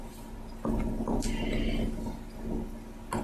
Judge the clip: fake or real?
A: real